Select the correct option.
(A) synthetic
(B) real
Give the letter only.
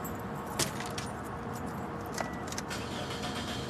B